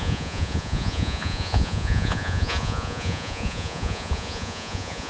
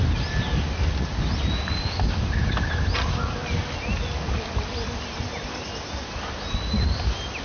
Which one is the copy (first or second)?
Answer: first